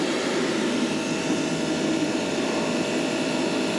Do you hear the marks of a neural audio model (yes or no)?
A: no